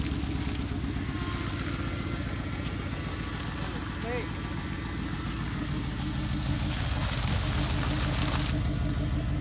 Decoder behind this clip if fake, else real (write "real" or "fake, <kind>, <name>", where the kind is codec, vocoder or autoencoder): real